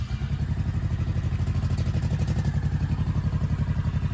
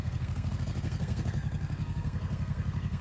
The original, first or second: first